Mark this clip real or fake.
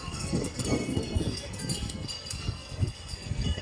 fake